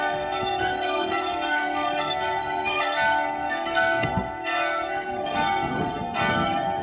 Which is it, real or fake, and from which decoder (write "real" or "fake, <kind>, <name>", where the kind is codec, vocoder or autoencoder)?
fake, codec, SNAC